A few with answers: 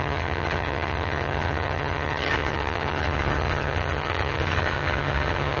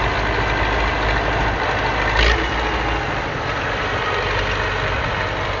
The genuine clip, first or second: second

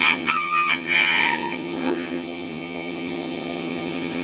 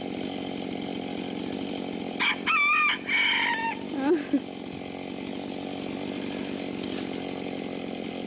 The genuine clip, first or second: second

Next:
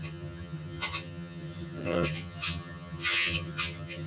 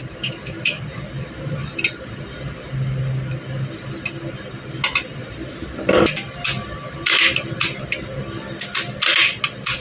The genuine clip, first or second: second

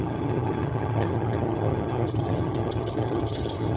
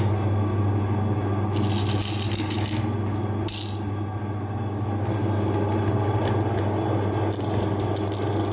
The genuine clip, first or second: second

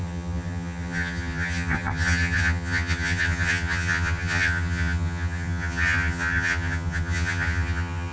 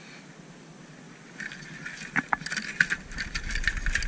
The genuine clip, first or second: second